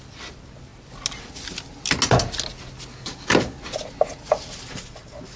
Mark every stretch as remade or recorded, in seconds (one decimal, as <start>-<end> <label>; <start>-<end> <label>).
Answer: 0.0-2.9 recorded; 2.9-3.6 remade; 3.6-5.4 recorded